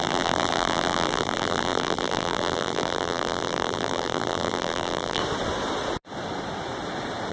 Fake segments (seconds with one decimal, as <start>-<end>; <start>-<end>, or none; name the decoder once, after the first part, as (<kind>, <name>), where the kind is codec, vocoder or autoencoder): 0.0-5.2 (vocoder, BigVGAN v2)